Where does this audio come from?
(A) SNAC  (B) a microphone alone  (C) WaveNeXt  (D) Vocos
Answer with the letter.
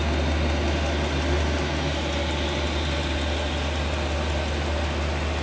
B